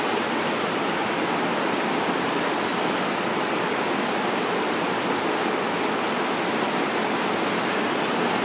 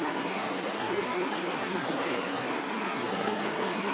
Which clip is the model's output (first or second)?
second